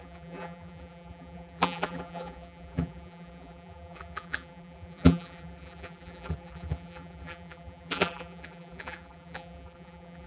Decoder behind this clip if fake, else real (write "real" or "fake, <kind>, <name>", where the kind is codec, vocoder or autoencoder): fake, vocoder, BigVGAN v2